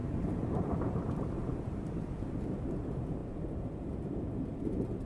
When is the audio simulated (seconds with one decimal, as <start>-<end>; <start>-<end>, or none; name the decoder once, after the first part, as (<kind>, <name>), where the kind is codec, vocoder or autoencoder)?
0.0-2.1 (vocoder, BigVGAN v2); 3.2-5.1